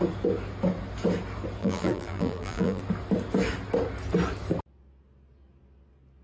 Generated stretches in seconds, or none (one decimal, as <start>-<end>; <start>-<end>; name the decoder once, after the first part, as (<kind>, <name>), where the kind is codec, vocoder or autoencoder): 1.6-2.8 (vocoder, BigVGAN v2)